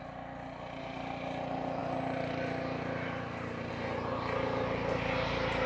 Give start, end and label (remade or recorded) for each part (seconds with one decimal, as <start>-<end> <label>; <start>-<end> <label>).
0.0-5.7 recorded